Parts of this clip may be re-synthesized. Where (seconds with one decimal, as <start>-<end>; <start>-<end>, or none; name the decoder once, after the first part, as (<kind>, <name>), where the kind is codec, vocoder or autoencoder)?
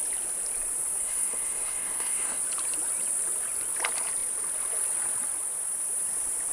1.0-2.4 (codec, SNAC)